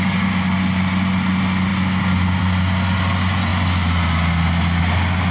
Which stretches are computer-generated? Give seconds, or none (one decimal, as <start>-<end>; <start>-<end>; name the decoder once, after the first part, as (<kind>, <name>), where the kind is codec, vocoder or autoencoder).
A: none